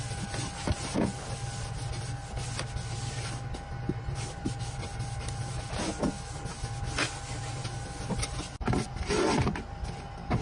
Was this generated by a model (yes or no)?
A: no